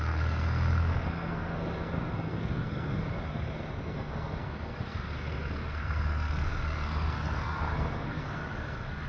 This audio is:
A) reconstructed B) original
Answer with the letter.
A